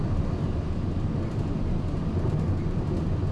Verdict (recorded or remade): recorded